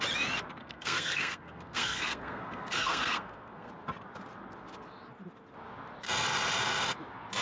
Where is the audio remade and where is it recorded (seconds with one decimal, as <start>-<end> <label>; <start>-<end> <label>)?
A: 0.0-0.6 recorded; 0.6-3.7 remade; 3.7-7.4 recorded